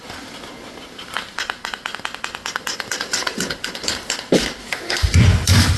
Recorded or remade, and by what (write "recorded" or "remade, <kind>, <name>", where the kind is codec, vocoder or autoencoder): recorded